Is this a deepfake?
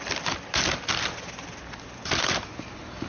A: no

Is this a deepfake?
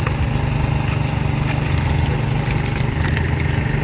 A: no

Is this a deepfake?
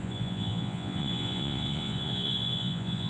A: yes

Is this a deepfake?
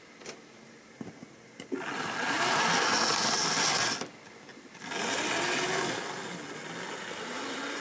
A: no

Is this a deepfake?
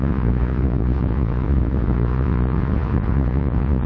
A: yes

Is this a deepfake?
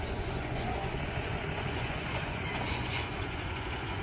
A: yes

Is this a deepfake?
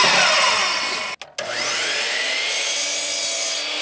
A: no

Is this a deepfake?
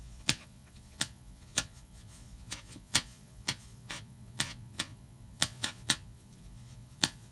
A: yes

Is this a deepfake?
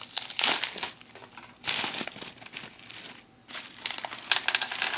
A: no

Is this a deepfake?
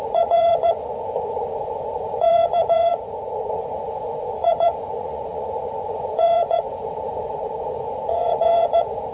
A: yes